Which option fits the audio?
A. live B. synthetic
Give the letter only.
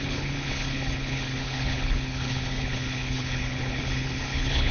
B